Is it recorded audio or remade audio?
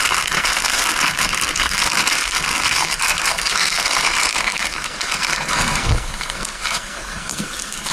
remade